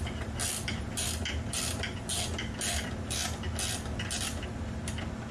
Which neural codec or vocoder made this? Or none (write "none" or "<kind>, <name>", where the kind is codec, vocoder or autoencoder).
none